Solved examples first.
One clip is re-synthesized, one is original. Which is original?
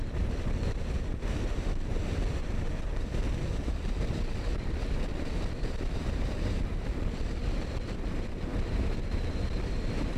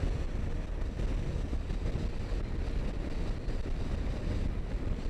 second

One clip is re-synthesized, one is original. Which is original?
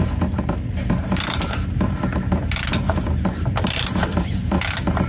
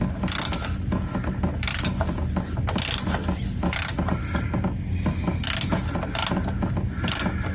second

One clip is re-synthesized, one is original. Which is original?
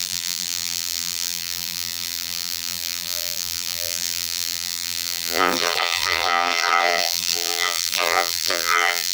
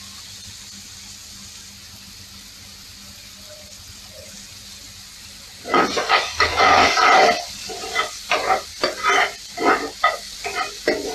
second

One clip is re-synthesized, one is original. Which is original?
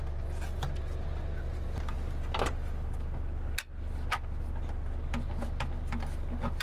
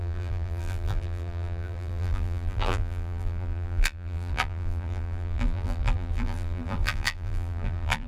first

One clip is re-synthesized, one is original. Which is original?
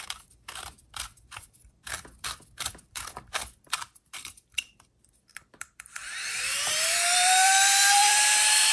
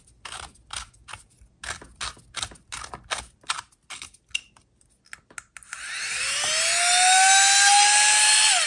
second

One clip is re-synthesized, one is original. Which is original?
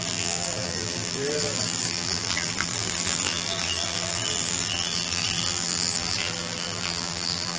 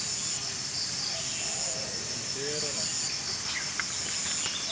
second